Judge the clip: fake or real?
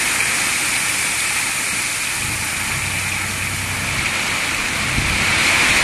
real